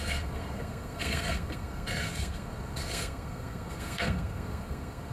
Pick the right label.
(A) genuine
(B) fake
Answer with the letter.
B